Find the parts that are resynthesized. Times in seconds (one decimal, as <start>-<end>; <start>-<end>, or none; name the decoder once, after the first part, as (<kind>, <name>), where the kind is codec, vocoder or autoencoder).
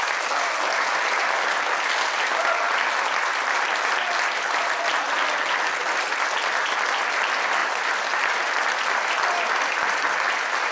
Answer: none